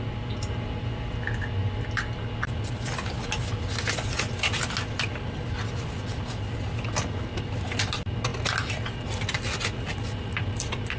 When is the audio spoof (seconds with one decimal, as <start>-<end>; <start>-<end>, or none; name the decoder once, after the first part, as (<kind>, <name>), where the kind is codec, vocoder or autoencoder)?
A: none